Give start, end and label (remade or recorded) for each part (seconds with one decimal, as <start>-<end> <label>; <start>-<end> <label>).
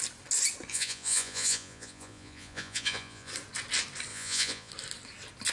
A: 0.0-0.7 recorded; 0.7-3.3 remade; 3.3-4.1 recorded; 4.1-4.7 remade; 4.7-5.5 recorded